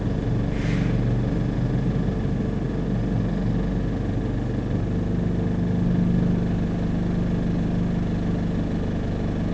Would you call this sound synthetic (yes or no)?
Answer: no